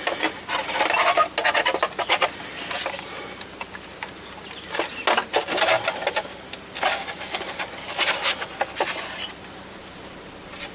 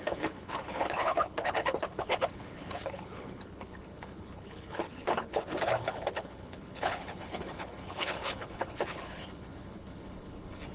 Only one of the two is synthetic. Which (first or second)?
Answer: second